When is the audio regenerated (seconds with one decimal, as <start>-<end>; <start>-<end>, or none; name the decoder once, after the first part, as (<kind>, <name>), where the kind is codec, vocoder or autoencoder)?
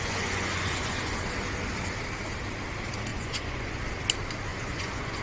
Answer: 0.0-1.2 (vocoder, Vocos); 3.1-3.8; 4.5-5.2